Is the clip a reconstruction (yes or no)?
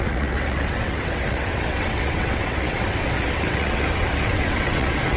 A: yes